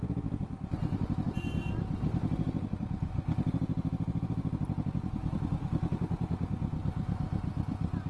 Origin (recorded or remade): recorded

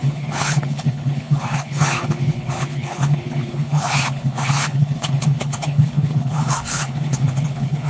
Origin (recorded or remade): remade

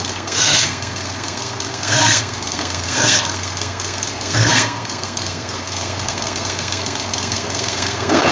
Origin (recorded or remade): remade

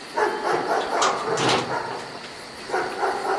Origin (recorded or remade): recorded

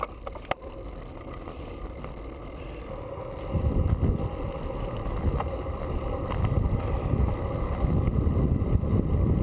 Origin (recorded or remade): remade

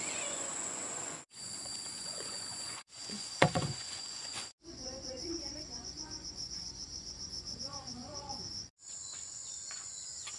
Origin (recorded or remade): remade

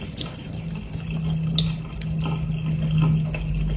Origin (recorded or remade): recorded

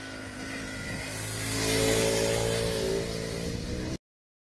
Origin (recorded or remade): recorded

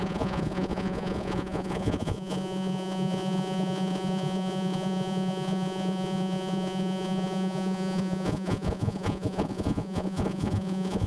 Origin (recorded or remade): remade